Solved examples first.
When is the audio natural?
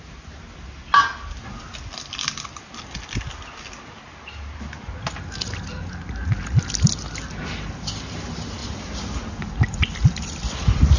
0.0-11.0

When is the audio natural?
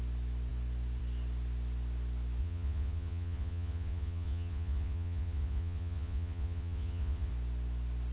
0.0-2.4; 7.3-8.1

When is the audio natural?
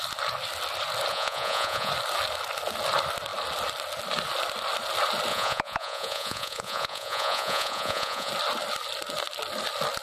0.0-1.1; 1.9-5.3; 8.3-10.0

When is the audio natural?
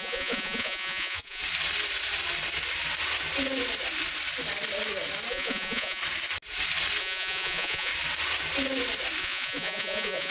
1.4-5.3; 6.0-7.0; 7.9-9.2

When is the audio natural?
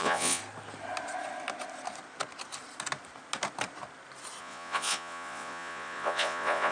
0.4-4.4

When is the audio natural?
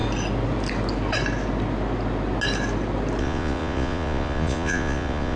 0.0-3.2